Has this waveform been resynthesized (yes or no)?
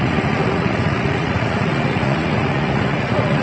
yes